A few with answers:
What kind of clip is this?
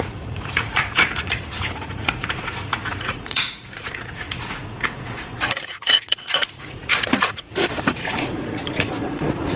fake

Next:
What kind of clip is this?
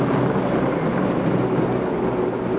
real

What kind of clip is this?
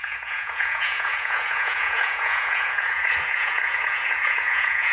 fake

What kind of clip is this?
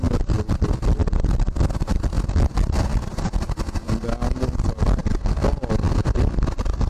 real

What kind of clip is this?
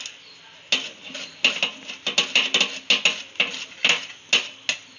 real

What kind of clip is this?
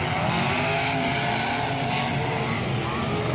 real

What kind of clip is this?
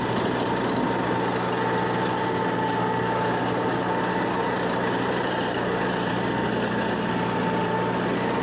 real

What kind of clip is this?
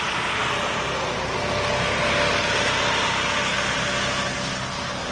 real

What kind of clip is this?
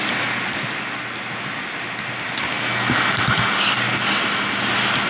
real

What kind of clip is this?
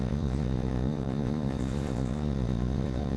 fake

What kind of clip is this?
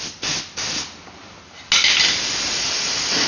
real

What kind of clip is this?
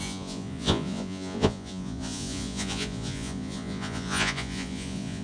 fake